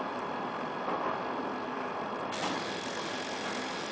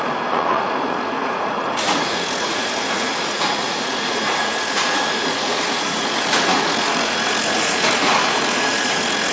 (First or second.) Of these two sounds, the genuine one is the first